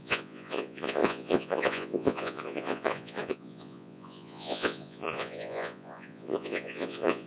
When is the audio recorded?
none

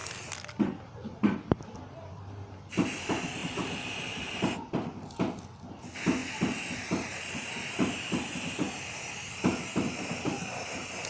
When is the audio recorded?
0.0-11.1

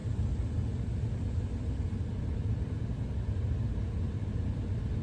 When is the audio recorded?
0.0-5.0

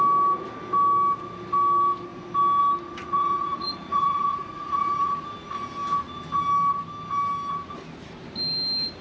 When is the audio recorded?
0.0-3.0; 5.1-9.0

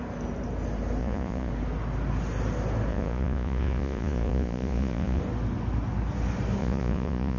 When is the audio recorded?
0.0-1.0; 1.5-2.9; 5.2-6.6